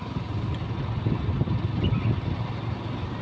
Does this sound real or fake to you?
real